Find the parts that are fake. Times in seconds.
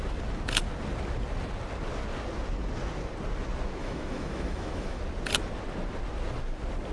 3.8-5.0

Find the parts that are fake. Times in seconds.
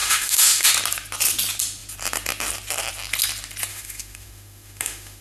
0.0-0.7; 3.7-5.2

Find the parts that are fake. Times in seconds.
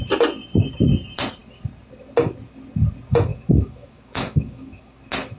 3.3-5.0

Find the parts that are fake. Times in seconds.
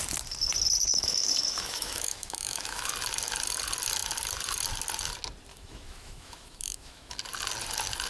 0.9-2.9; 5.5-7.2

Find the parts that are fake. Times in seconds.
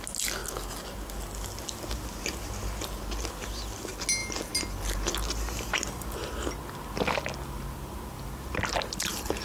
none